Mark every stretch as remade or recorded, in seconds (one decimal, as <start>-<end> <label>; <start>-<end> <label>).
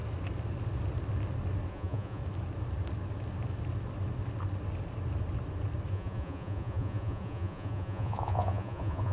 0.0-1.7 recorded; 1.7-2.2 remade; 2.2-5.9 recorded; 5.9-9.1 remade